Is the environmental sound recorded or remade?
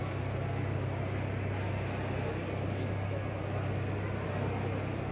recorded